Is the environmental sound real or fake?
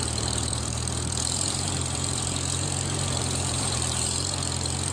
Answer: fake